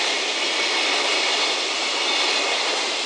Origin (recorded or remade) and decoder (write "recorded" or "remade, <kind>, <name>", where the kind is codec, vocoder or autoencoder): recorded